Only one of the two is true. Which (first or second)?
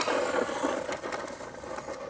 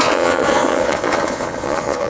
first